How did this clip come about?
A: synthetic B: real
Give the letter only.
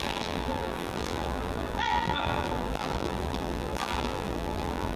A